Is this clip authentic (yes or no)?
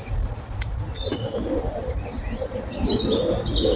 yes